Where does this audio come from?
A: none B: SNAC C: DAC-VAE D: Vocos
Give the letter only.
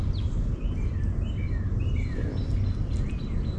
A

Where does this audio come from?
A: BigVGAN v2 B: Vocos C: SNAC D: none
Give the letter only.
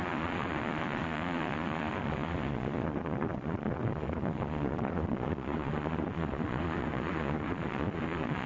B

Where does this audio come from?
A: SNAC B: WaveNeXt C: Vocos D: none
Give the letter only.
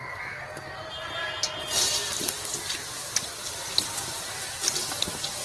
D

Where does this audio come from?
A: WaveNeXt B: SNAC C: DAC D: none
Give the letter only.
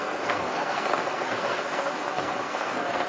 B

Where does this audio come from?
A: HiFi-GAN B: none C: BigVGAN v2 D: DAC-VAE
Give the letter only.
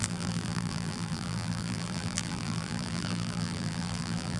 C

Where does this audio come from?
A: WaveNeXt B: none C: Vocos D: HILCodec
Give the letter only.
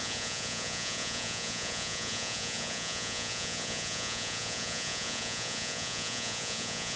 C